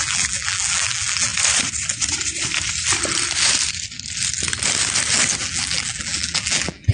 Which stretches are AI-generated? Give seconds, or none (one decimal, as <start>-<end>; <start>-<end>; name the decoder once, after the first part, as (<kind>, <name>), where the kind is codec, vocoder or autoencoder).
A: 0.0-1.3 (vocoder, BigVGAN v2); 5.4-6.9